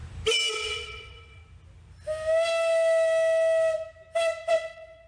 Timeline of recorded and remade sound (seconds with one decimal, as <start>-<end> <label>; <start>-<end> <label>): 0.0-0.5 recorded; 0.5-1.4 remade; 1.4-4.5 recorded; 4.5-5.1 remade